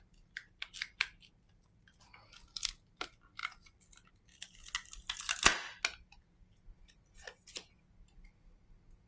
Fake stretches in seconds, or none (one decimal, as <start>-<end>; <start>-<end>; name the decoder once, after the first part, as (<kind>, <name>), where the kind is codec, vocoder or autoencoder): none